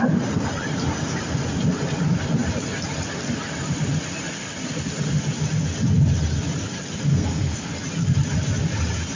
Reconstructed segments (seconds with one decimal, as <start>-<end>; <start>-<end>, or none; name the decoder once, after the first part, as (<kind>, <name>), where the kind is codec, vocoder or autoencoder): 7.1-7.7 (codec, SNAC)